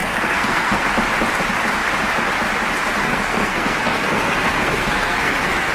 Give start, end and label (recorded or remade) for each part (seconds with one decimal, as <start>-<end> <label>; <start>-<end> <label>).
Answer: 0.0-0.9 remade; 0.9-3.0 recorded; 3.0-5.7 remade